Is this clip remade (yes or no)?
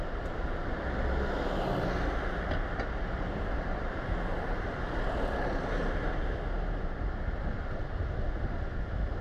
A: no